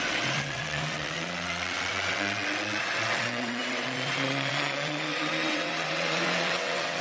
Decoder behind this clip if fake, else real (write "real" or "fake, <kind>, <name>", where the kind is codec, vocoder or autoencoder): fake, vocoder, WaveNeXt